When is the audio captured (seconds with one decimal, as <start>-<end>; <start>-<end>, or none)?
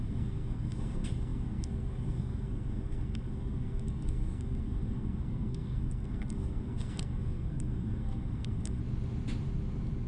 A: 8.8-10.1